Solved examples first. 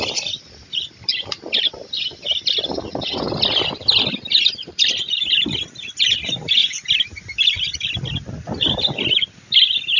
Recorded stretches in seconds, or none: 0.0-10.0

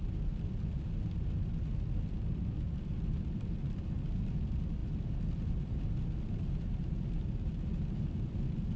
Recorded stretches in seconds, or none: 0.0-8.8

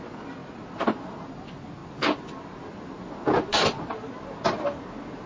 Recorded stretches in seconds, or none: 0.0-5.3

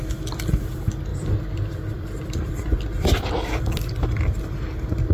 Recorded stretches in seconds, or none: 0.0-1.1; 4.2-5.1